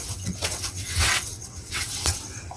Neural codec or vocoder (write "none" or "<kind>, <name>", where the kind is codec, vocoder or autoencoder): vocoder, WaveNeXt